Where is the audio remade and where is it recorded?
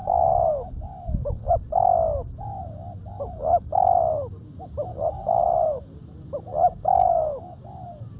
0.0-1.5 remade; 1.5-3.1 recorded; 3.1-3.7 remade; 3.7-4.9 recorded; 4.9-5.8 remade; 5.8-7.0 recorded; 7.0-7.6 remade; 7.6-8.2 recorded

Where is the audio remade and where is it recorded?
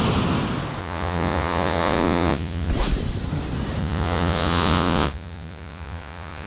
0.0-0.8 recorded; 0.8-2.7 remade; 2.7-3.8 recorded; 3.8-6.5 remade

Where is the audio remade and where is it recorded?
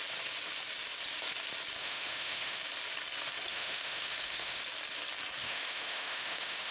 0.0-1.8 recorded; 1.8-2.6 remade; 2.6-3.5 recorded; 3.5-4.6 remade; 4.6-5.4 recorded; 5.4-6.7 remade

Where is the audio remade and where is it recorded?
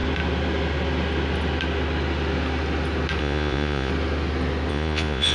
0.0-3.2 recorded; 3.2-3.9 remade; 3.9-4.7 recorded; 4.7-5.3 remade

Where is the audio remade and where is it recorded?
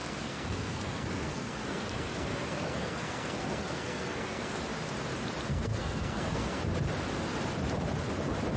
0.0-4.6 remade; 4.6-5.5 recorded; 5.5-6.6 remade; 6.6-8.6 recorded